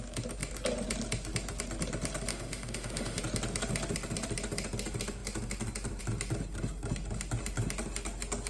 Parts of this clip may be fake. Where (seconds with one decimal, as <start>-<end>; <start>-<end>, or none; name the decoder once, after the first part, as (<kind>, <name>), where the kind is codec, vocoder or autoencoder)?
2.3-3.2 (autoencoder, DAC-VAE)